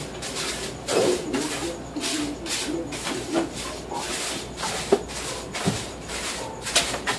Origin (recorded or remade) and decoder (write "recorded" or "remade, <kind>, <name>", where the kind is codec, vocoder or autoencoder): recorded